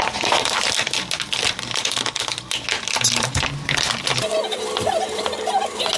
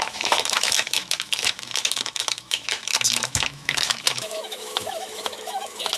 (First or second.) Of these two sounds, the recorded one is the first